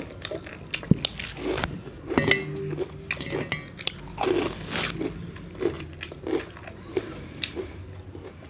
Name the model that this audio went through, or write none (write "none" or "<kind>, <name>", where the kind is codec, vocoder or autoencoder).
none